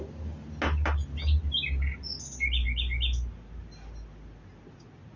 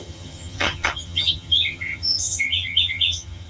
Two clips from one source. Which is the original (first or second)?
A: first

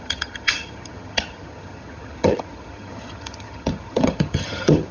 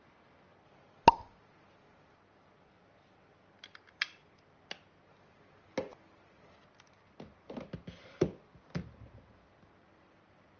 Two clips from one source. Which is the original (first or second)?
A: second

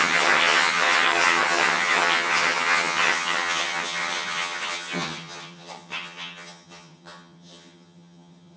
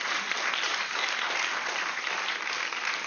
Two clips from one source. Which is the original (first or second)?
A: second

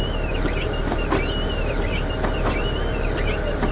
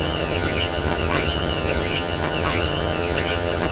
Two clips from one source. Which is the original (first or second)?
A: first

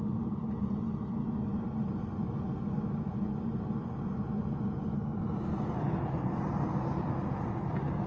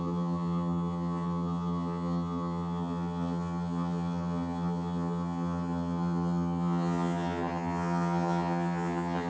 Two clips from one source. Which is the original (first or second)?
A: first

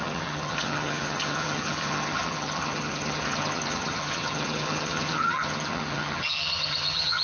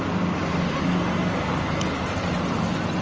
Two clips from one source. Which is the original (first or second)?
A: second